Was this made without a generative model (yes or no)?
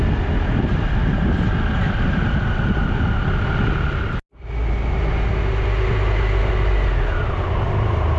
yes